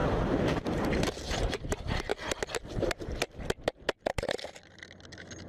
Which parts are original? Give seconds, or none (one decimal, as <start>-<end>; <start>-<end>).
0.0-1.3; 2.1-5.5